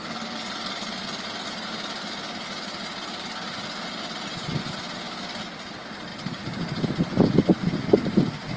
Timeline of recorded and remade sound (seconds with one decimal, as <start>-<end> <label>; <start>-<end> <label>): 0.0-6.1 recorded; 6.1-8.6 remade